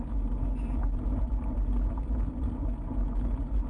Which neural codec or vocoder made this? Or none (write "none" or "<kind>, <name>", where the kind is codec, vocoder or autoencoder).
none